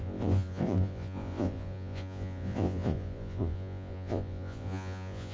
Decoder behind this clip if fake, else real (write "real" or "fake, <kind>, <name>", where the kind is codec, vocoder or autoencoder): fake, vocoder, Vocos